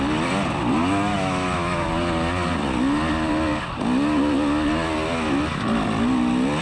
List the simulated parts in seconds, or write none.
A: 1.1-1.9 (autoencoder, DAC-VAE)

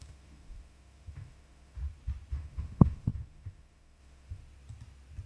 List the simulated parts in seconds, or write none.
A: 0.0-1.8 (autoencoder, DAC-VAE); 2.3-4.4

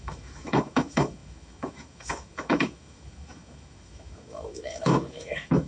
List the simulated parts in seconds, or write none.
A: 0.0-5.7 (autoencoder, DAC-VAE)

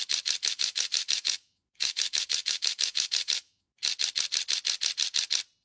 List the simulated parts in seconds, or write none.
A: 0.4-3.8 (autoencoder, DAC-VAE)

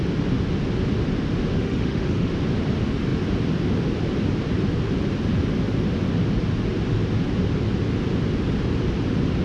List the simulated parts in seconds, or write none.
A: 1.5-2.3 (autoencoder, DAC-VAE)

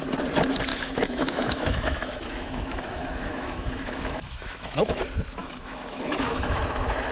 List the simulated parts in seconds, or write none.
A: 0.7-5.0 (autoencoder, DAC-VAE); 5.4-6.6